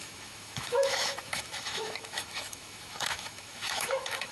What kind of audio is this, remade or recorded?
remade